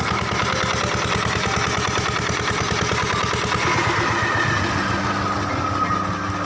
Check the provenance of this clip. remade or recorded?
recorded